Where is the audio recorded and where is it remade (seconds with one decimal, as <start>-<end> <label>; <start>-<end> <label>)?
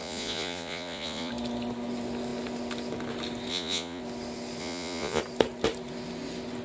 0.0-1.3 remade; 1.3-3.5 recorded; 3.5-4.0 remade; 4.0-4.6 recorded; 4.6-5.2 remade; 5.2-6.6 recorded